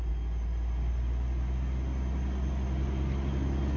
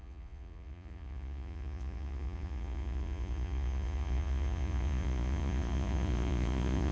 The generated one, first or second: second